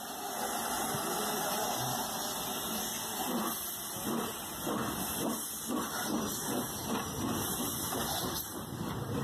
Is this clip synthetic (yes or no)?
no